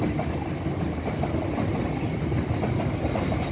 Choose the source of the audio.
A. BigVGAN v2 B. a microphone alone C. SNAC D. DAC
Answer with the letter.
B